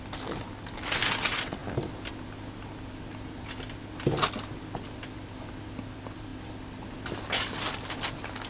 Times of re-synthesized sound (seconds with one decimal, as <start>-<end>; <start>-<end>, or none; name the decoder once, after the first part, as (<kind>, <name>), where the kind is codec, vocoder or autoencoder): none